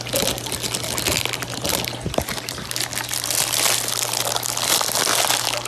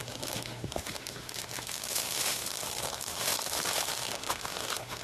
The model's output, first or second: second